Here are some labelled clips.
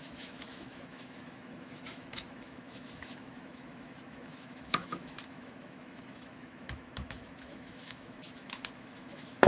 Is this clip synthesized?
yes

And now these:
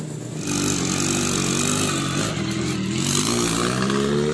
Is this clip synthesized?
no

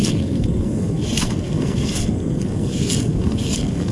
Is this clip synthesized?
yes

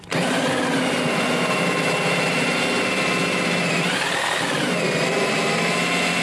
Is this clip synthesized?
no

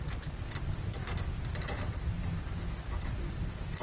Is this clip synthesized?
no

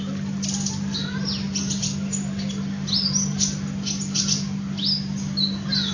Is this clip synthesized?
no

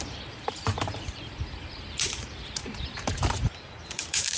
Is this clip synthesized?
yes